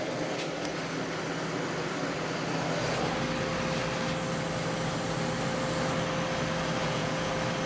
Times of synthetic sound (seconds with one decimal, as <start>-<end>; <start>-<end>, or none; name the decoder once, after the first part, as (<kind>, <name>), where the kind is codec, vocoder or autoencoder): 6.8-7.3 (vocoder, Vocos)